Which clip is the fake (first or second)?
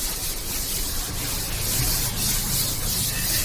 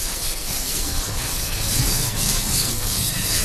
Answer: second